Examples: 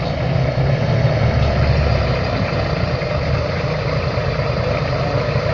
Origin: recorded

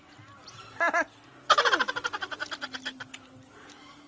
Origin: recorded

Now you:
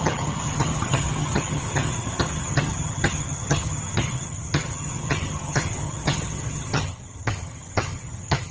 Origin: remade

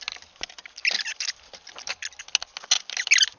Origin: recorded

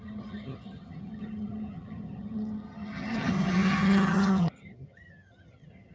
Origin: remade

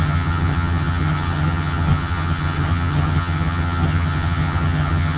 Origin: remade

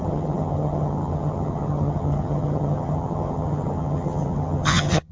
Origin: remade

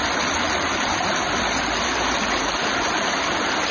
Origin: recorded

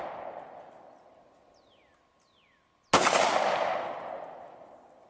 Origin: recorded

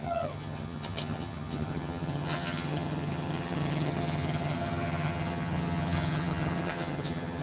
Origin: remade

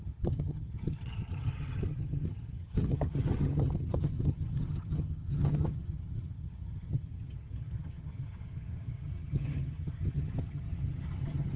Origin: remade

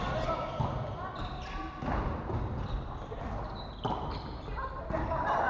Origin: recorded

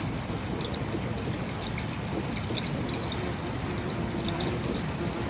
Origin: recorded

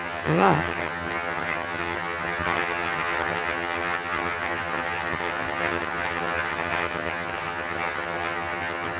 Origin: remade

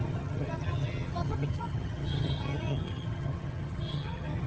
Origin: remade